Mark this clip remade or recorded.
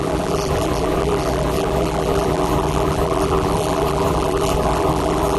remade